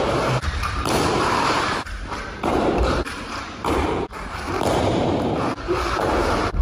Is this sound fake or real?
fake